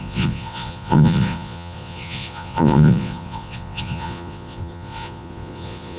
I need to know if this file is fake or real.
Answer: fake